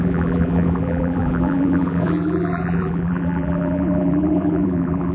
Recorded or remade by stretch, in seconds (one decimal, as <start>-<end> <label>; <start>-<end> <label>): 0.0-5.1 remade